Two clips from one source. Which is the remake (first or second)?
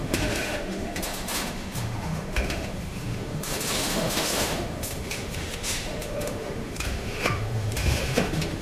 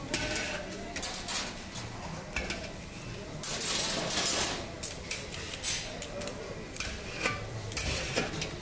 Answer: first